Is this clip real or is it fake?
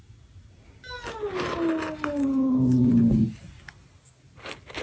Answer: real